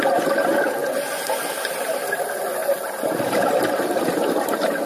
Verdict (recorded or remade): recorded